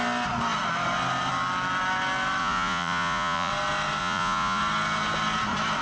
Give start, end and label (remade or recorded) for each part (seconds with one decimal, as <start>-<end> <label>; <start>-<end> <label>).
0.0-2.4 recorded; 2.4-3.5 remade; 3.5-4.0 recorded; 4.0-4.6 remade; 4.6-5.8 recorded